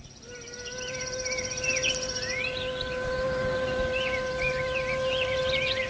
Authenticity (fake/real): real